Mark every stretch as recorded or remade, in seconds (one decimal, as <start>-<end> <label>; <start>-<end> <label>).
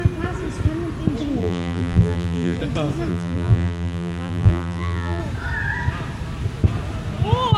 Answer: 0.0-1.4 recorded; 1.4-2.6 remade; 2.6-3.1 recorded; 3.1-5.2 remade; 5.2-7.6 recorded